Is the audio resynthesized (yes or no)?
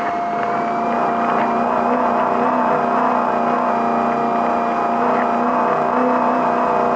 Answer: no